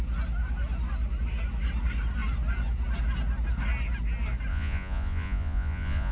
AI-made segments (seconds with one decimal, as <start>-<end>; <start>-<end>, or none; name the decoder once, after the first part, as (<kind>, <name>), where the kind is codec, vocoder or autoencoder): 4.5-6.1 (vocoder, Vocos)